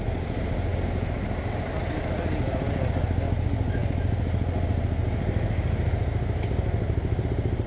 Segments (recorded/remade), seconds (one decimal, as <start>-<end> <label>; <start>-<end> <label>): 0.0-7.7 recorded